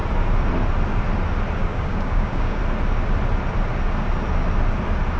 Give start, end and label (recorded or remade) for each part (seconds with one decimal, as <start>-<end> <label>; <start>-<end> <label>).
0.0-1.6 recorded; 1.6-2.6 remade; 2.6-5.2 recorded